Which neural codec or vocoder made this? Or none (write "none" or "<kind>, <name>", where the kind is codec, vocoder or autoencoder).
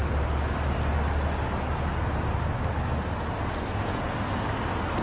none